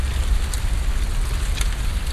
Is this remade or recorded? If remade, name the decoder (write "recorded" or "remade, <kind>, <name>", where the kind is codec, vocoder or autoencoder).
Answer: recorded